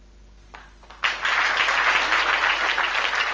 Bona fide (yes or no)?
yes